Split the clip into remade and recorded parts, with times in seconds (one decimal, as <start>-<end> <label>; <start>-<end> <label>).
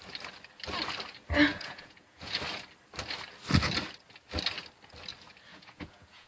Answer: 0.0-1.5 recorded; 1.5-2.4 remade; 2.4-5.5 recorded; 5.5-6.3 remade